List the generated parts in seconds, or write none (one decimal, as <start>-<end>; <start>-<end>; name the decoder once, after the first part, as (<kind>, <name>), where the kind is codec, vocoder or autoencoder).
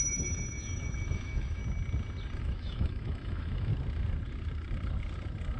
0.0-1.6 (autoencoder, DAC-VAE); 2.4-3.7